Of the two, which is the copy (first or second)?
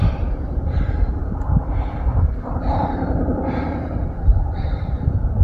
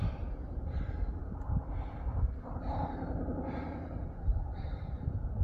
first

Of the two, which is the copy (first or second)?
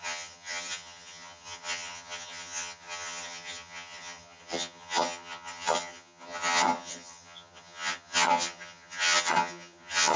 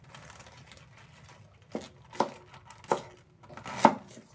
first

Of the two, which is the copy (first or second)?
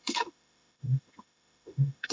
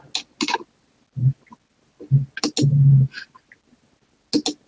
first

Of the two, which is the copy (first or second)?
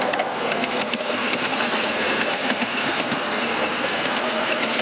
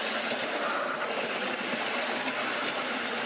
first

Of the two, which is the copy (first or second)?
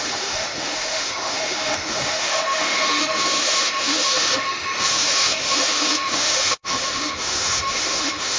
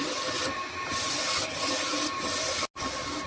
first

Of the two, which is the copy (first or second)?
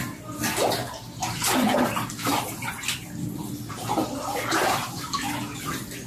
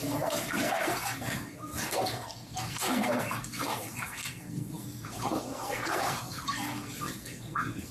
second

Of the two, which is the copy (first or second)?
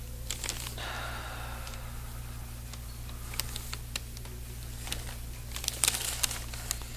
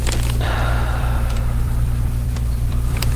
second